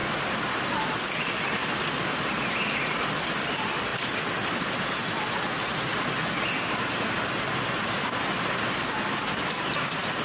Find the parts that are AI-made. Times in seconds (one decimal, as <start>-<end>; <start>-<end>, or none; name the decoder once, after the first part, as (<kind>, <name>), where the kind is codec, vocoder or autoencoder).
0.0-3.9 (vocoder, BigVGAN v2); 6.7-10.2